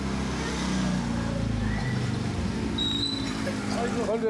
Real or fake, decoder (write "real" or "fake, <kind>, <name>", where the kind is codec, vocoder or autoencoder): real